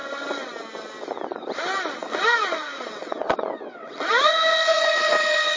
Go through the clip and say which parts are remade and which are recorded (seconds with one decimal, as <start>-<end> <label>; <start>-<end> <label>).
0.0-0.5 remade; 0.5-2.0 recorded; 2.0-5.6 remade